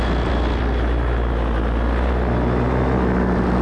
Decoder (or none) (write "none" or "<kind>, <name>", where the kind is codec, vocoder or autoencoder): none